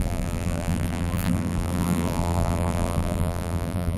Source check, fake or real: fake